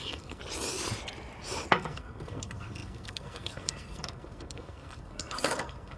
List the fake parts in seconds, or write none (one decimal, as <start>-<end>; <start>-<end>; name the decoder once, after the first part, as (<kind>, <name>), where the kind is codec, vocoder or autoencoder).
0.0-0.4 (codec, SNAC); 1.7-6.0